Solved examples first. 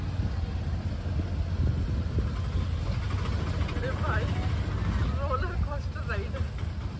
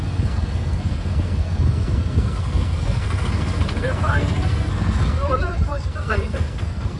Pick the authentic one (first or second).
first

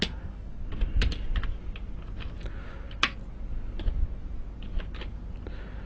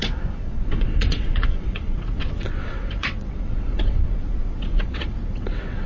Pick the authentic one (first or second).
first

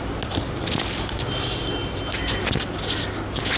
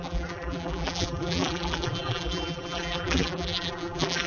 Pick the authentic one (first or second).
first